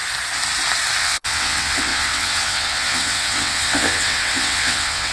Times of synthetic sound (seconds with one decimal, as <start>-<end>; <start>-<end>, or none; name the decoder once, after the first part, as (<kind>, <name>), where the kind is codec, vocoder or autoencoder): 1.0-5.1 (vocoder, WaveNeXt)